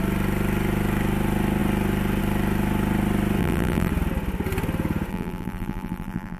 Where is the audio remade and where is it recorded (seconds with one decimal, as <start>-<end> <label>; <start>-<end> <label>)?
0.0-3.4 recorded; 3.4-3.9 remade; 3.9-5.1 recorded; 5.1-6.4 remade

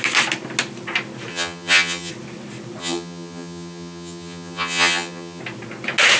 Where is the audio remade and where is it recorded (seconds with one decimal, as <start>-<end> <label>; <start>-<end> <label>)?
0.0-1.3 recorded; 1.3-2.1 remade; 2.1-2.8 recorded; 2.8-5.4 remade; 5.4-6.2 recorded

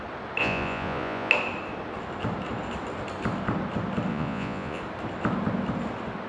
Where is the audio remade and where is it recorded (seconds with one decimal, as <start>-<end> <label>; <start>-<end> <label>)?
0.0-0.4 recorded; 0.4-1.3 remade; 1.3-4.1 recorded; 4.1-4.8 remade; 4.8-6.3 recorded